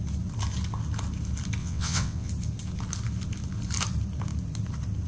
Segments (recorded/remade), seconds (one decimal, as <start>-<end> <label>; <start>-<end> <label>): 0.0-1.6 recorded; 1.6-2.3 remade; 2.3-5.1 recorded